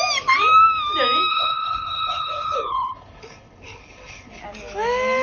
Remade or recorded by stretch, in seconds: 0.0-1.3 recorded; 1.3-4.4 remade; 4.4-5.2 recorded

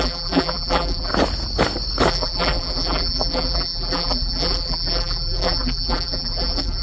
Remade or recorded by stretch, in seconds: 0.0-1.1 remade; 1.1-2.1 recorded; 2.1-6.8 remade

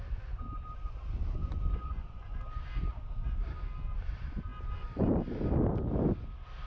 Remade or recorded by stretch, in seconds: 0.0-1.4 recorded; 1.4-2.4 remade; 2.4-6.7 recorded